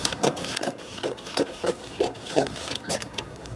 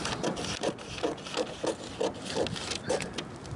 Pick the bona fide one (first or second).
second